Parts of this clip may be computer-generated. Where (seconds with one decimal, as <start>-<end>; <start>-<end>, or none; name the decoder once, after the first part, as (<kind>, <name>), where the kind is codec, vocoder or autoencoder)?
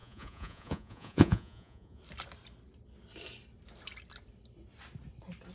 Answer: 0.0-2.0 (vocoder, Vocos)